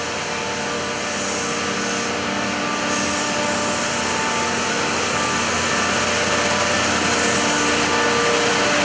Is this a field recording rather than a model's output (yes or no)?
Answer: yes